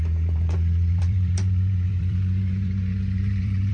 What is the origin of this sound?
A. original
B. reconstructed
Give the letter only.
B